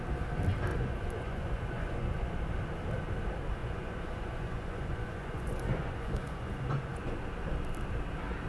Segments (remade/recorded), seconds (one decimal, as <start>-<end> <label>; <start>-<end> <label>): 0.0-0.7 recorded; 0.7-2.3 remade; 2.3-3.6 recorded; 3.6-7.2 remade; 7.2-8.5 recorded